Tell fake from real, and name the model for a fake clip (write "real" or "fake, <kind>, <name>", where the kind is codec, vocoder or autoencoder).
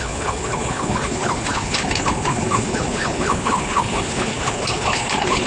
fake, codec, HILCodec